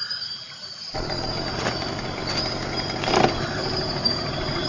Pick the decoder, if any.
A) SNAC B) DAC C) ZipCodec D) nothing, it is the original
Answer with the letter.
D